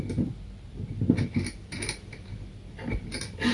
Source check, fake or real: real